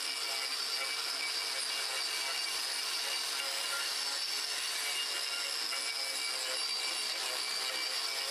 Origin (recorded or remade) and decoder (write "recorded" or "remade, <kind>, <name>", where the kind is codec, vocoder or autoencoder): recorded